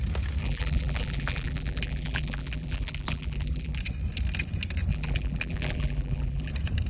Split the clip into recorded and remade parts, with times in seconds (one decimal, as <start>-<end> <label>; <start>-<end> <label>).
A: 0.0-0.4 recorded; 0.4-3.8 remade; 3.8-4.9 recorded; 4.9-6.5 remade; 6.5-6.9 recorded